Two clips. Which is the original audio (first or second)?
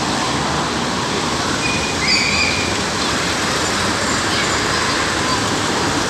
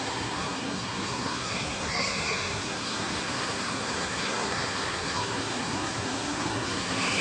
first